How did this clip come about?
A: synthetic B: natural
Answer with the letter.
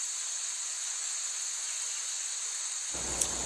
A